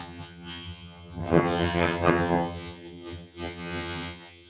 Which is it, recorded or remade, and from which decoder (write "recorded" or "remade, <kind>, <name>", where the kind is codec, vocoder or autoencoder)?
remade, vocoder, HiFi-GAN